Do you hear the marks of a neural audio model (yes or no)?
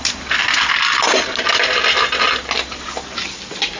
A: no